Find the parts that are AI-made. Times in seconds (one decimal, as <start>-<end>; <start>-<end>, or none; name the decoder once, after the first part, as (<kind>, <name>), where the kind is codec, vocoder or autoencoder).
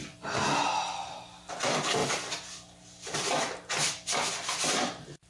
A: none